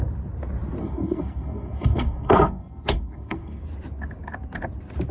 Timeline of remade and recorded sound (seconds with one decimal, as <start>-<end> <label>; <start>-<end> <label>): 0.0-0.8 recorded; 0.8-3.6 remade; 3.6-5.1 recorded